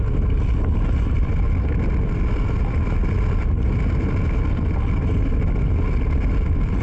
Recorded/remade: recorded